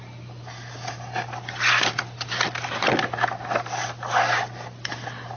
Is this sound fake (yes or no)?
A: no